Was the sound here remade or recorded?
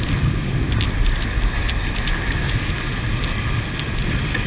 recorded